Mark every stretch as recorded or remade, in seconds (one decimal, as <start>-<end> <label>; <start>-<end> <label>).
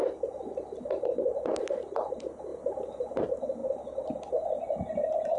0.0-5.4 recorded